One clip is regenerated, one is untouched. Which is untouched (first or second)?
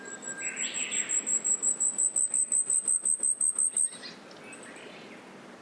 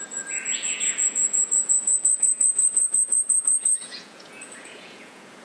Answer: first